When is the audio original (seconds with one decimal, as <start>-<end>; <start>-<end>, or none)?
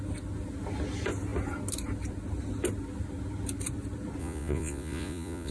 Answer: 0.0-4.2